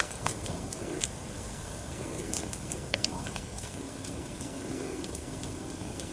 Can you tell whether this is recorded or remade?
remade